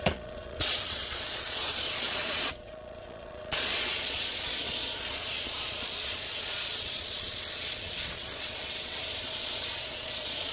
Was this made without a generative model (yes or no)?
no